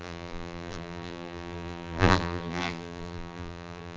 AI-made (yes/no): yes